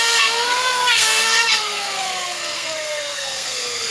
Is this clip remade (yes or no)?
yes